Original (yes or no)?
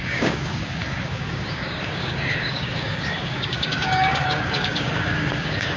no